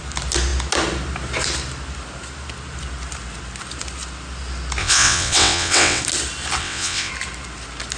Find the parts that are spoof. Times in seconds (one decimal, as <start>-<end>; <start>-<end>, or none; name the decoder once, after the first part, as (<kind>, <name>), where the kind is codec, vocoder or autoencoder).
4.8-6.0 (vocoder, WaveNeXt); 6.6-7.1

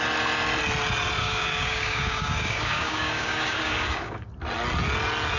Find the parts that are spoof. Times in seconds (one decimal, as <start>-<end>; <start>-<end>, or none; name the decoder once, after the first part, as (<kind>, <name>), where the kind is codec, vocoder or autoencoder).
1.2-4.3 (codec, DAC)